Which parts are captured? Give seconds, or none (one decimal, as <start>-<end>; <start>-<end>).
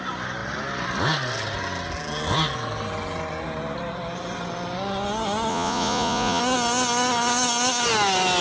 0.0-5.5; 6.4-8.4